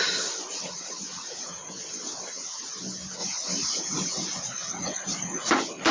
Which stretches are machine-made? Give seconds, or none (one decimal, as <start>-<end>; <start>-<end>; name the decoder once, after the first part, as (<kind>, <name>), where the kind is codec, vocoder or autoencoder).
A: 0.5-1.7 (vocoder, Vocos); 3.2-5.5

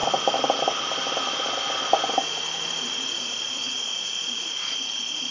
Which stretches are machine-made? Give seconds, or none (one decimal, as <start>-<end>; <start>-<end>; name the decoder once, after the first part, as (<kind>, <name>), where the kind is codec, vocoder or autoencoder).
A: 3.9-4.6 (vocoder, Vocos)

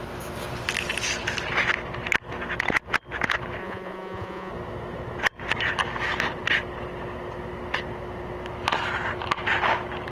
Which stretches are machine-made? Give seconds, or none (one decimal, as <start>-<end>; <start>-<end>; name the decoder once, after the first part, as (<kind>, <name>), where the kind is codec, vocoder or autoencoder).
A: 3.6-4.5 (vocoder, Vocos)

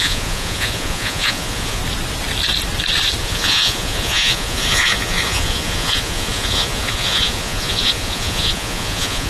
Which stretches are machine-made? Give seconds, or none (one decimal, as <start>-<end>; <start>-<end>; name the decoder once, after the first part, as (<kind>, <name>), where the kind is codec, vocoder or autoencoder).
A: 0.0-1.8 (vocoder, Vocos); 3.2-9.3

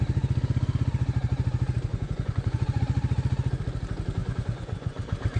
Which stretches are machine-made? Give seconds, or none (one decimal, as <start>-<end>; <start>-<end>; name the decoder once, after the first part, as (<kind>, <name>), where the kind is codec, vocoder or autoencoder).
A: 1.9-2.8 (vocoder, Vocos); 4.2-5.0